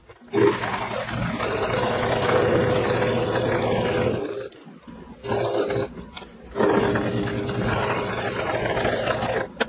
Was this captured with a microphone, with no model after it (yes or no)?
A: yes